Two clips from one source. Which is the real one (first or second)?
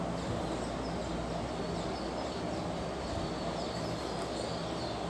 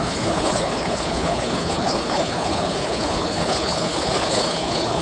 first